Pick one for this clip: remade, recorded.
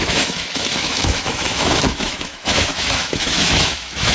remade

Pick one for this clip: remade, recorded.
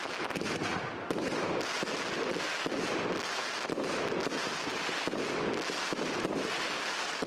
recorded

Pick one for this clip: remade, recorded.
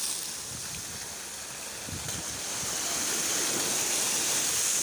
recorded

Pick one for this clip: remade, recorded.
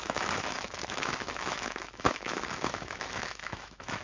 remade